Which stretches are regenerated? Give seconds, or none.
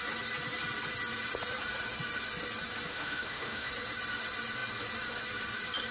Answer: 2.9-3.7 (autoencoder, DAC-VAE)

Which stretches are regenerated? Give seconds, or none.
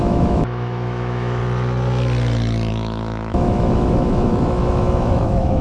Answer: 0.0-1.4 (autoencoder, DAC-VAE); 2.7-5.6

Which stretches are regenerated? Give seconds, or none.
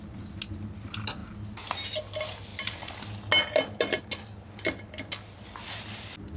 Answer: none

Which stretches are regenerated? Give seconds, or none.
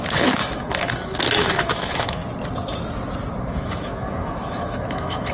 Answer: 0.0-2.2 (autoencoder, DAC-VAE); 3.4-5.3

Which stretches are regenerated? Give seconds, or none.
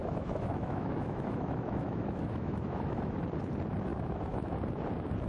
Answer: 0.0-3.2 (autoencoder, DAC-VAE); 3.9-4.6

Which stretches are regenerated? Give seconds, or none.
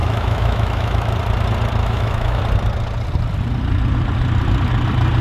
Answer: 0.0-1.1 (autoencoder, DAC-VAE); 1.8-2.4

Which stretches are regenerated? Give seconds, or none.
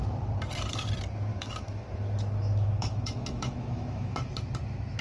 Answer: 1.3-4.3 (autoencoder, DAC-VAE)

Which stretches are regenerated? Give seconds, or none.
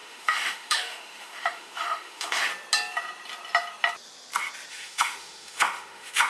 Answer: 0.0-2.5 (autoencoder, DAC-VAE); 4.7-6.3